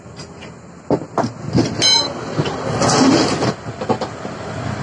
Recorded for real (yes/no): yes